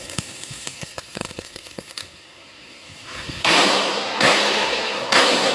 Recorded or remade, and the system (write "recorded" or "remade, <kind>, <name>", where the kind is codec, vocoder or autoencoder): remade, codec, SNAC